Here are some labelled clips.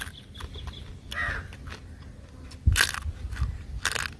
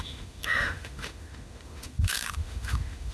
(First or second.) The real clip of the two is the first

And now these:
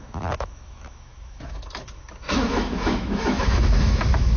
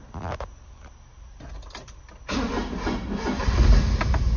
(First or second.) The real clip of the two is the second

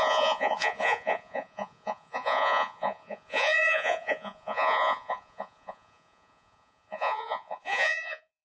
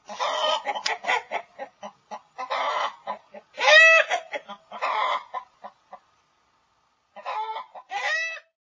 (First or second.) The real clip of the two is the second